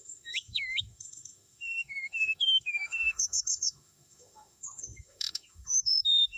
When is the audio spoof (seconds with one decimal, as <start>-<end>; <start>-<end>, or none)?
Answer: 0.0-6.4